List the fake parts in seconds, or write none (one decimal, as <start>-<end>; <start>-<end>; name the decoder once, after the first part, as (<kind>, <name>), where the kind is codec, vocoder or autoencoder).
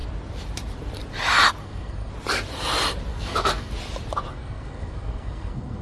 1.6-2.1 (codec, SNAC); 3.1-3.7; 4.3-5.8